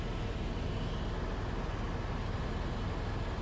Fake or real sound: real